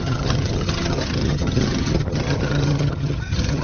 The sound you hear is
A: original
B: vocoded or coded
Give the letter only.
B